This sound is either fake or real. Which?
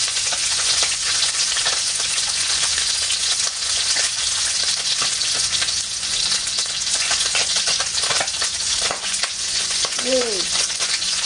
fake